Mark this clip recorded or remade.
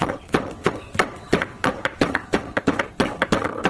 remade